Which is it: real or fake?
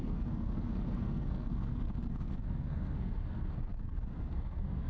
fake